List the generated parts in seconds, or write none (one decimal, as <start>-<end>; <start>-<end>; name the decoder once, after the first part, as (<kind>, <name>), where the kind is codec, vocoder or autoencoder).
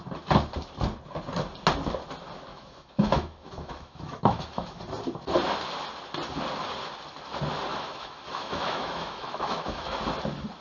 2.5-4.8 (autoencoder, DAC-VAE); 7.7-10.0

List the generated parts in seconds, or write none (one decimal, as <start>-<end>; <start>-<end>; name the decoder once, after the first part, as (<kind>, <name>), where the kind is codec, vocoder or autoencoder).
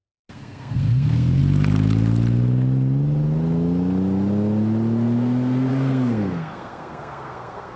0.0-1.4 (codec, SNAC); 5.7-7.8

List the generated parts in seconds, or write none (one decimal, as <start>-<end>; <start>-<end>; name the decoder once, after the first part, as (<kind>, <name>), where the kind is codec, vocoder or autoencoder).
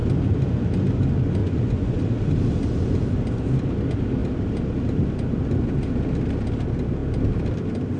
1.4-2.0 (vocoder, Vocos)